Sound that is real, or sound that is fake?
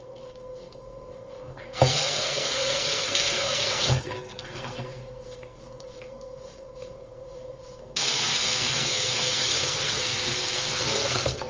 fake